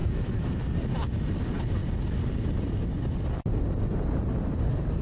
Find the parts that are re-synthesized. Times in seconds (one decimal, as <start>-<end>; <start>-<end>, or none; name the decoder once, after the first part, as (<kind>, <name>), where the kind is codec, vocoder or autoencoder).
1.8-2.7 (vocoder, BigVGAN v2)